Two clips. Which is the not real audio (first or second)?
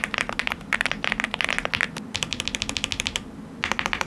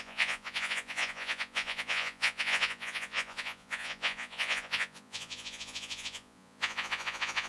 second